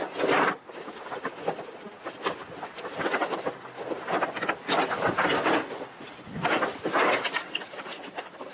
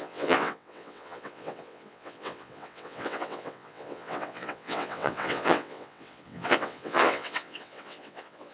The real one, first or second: first